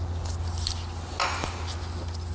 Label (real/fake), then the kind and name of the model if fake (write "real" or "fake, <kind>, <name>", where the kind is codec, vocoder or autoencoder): real